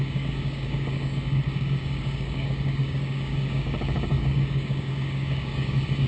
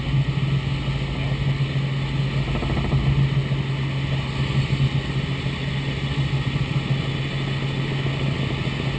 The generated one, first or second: first